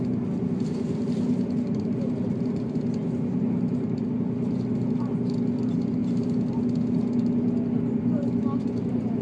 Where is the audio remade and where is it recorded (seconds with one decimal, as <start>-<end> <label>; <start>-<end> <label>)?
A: 0.0-9.2 recorded

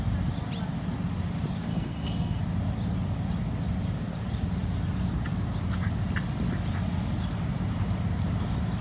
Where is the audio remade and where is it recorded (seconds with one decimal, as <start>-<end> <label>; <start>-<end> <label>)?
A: 0.0-1.7 recorded; 1.7-2.4 remade; 2.4-8.8 recorded

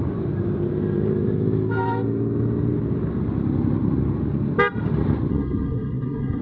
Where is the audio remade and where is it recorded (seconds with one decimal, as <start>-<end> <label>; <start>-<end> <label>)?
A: 0.0-5.3 recorded; 5.3-6.4 remade

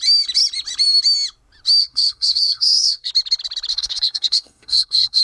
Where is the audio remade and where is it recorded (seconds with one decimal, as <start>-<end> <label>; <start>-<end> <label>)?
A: 0.0-1.8 recorded; 1.8-3.1 remade; 3.1-3.7 recorded; 3.7-5.2 remade

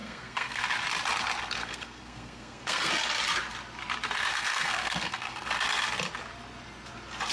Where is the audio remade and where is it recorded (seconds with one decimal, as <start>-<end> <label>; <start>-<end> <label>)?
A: 0.0-0.6 remade; 0.6-1.6 recorded; 1.6-2.9 remade; 2.9-4.3 recorded; 4.3-5.5 remade; 5.5-7.3 recorded